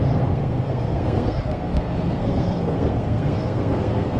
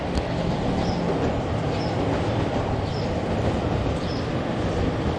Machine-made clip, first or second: first